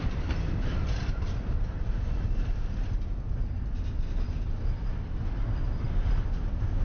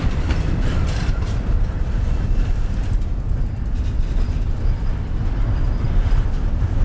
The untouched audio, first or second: first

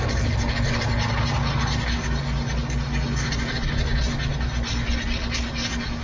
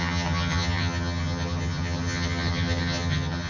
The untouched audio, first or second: first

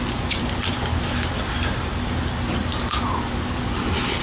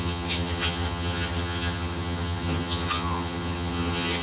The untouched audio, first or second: first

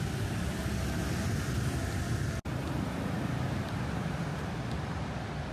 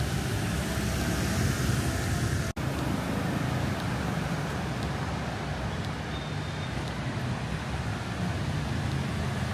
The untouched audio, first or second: second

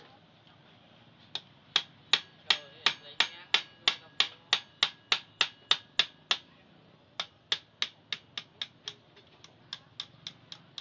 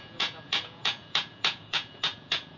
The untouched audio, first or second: first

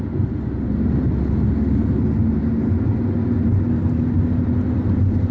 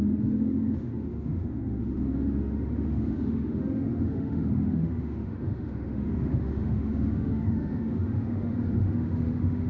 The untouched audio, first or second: first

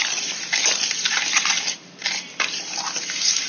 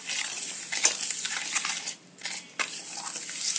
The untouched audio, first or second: second